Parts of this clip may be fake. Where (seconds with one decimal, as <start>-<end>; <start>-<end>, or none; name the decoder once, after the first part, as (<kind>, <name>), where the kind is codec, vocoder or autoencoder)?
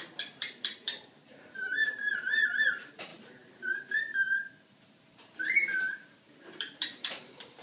0.0-1.7 (vocoder, BigVGAN v2); 2.5-7.6